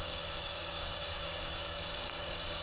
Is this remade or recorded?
remade